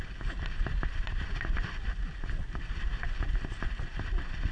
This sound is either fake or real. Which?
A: fake